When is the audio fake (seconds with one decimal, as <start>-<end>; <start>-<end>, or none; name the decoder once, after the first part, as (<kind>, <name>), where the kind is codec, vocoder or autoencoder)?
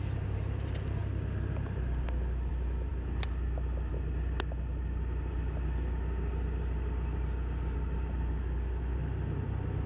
none